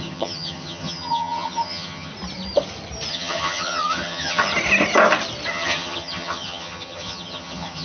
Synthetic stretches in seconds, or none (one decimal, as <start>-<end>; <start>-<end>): 0.0-2.1; 3.1-4.5; 5.5-7.8